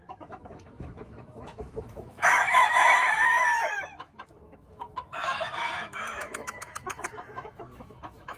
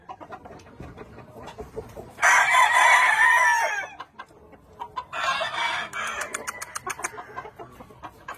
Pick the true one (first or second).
second